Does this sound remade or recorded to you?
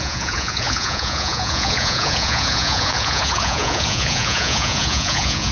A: remade